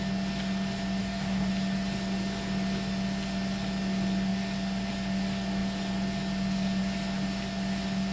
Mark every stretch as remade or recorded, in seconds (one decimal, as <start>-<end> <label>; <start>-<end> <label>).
0.0-1.0 recorded; 1.0-1.5 remade; 1.5-8.1 recorded